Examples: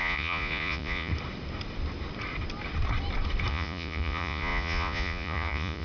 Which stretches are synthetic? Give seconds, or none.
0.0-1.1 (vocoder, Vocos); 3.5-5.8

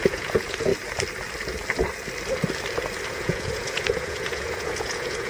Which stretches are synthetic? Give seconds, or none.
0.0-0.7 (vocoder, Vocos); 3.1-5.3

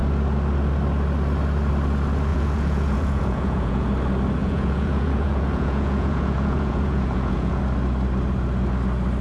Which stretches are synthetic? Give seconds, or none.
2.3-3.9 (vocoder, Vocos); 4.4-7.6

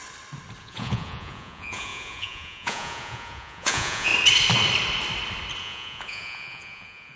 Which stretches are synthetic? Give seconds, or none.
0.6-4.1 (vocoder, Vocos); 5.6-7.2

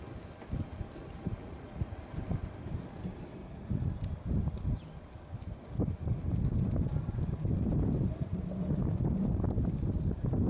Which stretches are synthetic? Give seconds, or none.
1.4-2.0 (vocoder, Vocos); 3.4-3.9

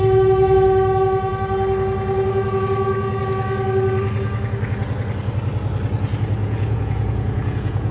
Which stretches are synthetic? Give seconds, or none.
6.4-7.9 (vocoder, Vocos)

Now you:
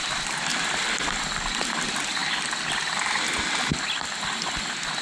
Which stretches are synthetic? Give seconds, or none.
none

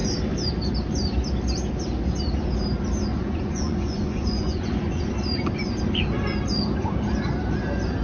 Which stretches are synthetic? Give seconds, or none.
3.1-5.0 (vocoder, Vocos)